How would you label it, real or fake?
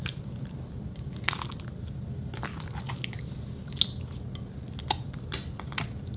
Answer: real